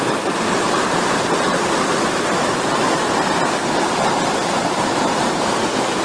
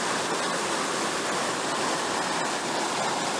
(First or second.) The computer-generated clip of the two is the first